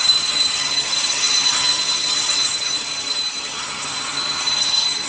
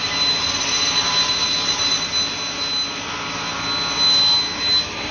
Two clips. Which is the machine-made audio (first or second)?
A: first